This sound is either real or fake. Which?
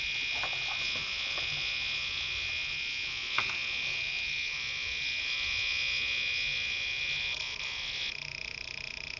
fake